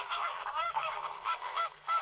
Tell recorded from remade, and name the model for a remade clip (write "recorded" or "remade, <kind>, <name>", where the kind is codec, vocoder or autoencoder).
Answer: remade, codec, SNAC